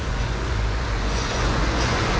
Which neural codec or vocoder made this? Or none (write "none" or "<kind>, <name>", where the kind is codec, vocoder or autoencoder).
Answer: vocoder, Vocos